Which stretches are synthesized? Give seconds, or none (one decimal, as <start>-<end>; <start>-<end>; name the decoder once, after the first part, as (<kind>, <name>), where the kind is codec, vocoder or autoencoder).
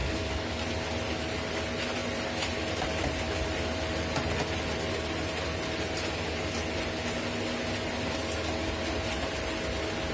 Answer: 0.0-0.6 (codec, DAC)